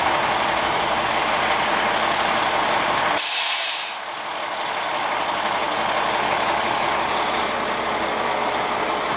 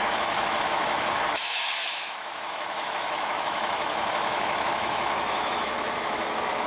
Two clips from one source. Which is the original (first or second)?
first